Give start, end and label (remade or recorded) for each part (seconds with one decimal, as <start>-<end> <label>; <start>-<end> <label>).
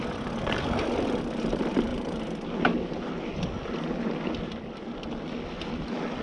0.0-1.9 recorded; 1.9-3.1 remade; 3.1-6.2 recorded